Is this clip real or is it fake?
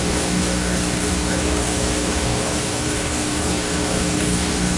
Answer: fake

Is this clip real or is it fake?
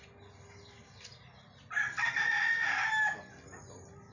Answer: real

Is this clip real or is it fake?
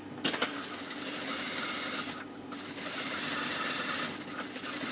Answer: real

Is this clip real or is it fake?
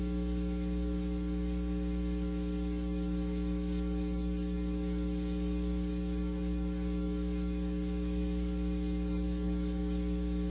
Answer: fake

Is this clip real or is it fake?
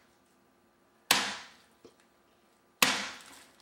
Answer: real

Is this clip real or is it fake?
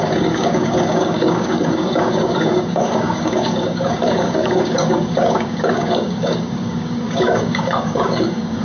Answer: fake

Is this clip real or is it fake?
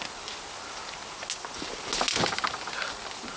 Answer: real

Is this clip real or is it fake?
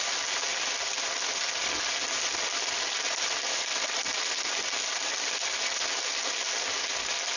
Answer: real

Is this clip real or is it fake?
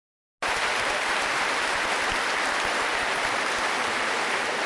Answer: real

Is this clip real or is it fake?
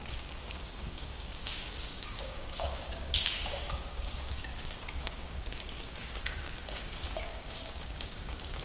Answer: fake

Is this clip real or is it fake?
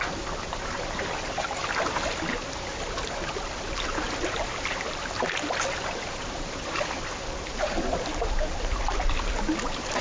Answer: real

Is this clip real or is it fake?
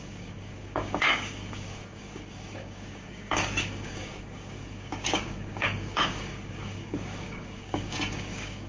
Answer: fake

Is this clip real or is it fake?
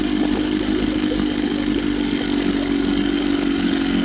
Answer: fake